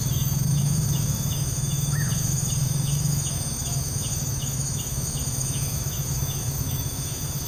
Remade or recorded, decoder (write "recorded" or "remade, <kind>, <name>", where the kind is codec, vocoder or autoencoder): remade, autoencoder, DAC-VAE